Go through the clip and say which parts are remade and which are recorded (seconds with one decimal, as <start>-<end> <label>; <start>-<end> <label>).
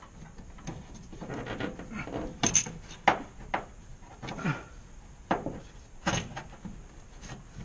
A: 0.0-7.6 recorded